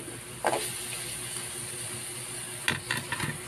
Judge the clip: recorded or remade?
recorded